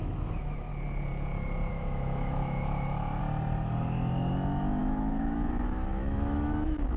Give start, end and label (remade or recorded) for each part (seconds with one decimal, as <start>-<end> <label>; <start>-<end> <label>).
0.0-0.7 remade; 0.7-1.7 recorded; 1.7-3.2 remade; 3.2-4.8 recorded; 4.8-7.0 remade